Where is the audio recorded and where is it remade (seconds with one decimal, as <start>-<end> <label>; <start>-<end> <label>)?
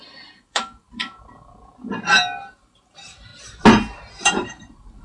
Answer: 0.0-1.0 remade; 1.0-2.5 recorded; 2.5-3.3 remade; 3.3-4.2 recorded; 4.2-5.0 remade